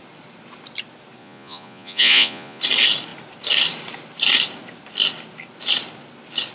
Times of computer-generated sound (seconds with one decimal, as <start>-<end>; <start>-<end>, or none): 1.2-2.6

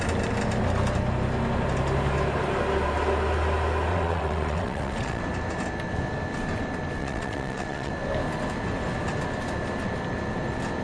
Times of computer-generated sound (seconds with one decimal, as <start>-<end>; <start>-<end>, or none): 3.9-5.2; 7.0-7.9

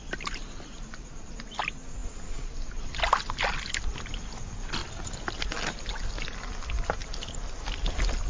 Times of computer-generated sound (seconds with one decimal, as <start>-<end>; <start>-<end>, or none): none

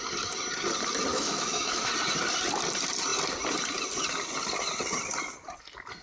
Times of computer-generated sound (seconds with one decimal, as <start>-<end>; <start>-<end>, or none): 1.1-1.9

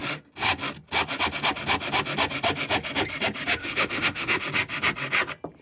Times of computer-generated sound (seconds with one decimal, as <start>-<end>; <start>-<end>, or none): 3.6-4.4

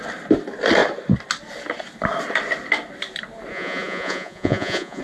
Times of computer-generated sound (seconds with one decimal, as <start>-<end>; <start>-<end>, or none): 3.5-5.0

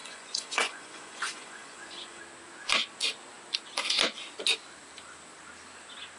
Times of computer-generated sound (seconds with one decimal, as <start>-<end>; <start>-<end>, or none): 0.0-2.2

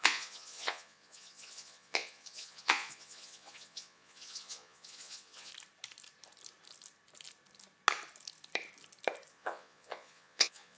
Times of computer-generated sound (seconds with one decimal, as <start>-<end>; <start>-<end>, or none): 0.0-5.5; 9.3-10.8